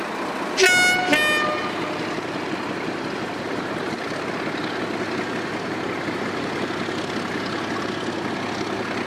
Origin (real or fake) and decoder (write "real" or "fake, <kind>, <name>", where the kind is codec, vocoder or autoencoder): real